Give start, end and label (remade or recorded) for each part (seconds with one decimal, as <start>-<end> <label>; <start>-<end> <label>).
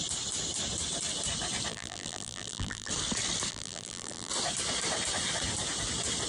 0.0-1.7 recorded; 1.7-2.9 remade; 2.9-3.5 recorded; 3.5-4.3 remade; 4.3-6.3 recorded